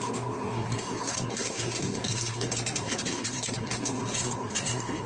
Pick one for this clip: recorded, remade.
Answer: remade